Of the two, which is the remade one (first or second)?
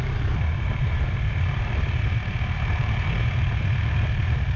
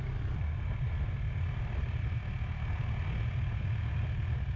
first